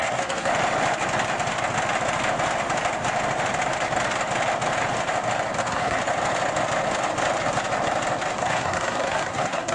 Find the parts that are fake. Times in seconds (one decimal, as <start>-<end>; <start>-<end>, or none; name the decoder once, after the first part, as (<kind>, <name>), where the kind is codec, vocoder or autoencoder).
0.0-0.5 (codec, SNAC); 5.6-6.0; 8.3-9.7